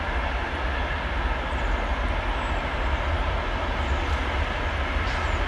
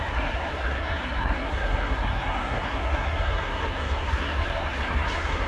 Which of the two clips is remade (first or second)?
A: second